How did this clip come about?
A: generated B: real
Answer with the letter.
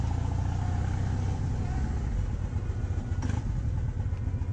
B